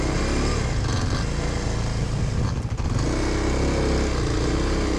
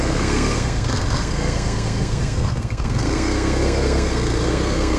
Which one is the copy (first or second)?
second